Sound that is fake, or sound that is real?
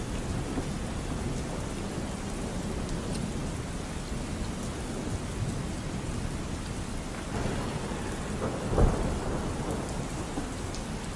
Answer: real